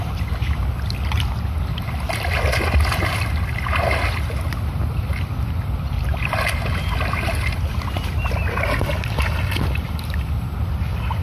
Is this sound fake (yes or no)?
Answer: no